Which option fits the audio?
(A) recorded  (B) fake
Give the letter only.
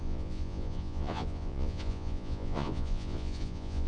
B